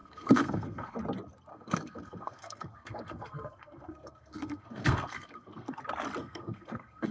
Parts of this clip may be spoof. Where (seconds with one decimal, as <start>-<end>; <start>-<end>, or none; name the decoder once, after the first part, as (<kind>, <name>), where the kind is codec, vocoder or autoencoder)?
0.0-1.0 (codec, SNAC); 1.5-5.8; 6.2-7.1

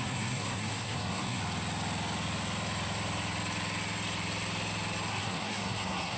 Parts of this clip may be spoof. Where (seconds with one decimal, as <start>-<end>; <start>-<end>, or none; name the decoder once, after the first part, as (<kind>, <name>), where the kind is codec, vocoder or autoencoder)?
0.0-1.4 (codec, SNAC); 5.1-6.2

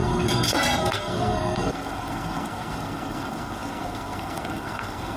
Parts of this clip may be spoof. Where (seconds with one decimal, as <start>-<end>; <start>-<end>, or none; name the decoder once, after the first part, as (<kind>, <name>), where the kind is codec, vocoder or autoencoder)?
0.0-5.2 (codec, SNAC)

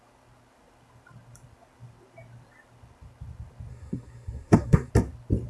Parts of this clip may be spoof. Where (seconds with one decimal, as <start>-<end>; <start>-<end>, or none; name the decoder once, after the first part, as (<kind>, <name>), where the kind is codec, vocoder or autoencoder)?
3.7-4.9 (codec, SNAC)

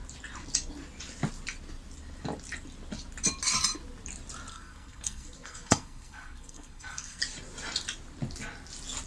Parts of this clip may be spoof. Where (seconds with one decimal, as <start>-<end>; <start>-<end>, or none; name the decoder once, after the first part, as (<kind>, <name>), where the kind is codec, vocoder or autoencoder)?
4.5-7.2 (codec, SNAC)